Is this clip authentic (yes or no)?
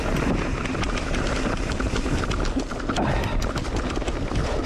yes